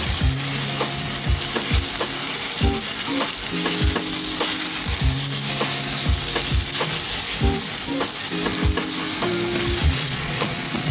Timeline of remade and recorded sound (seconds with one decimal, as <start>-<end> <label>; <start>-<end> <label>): 0.0-9.8 recorded; 9.8-10.9 remade